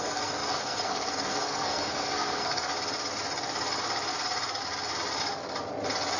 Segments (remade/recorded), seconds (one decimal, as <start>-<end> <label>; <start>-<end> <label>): 0.0-2.7 remade; 2.7-6.2 recorded